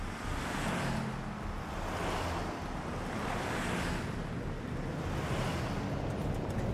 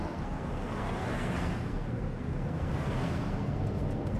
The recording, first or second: first